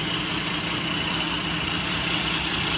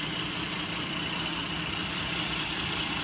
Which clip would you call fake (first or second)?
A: second